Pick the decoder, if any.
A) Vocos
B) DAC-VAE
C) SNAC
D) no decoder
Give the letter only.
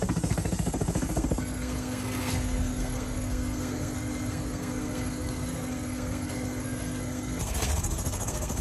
C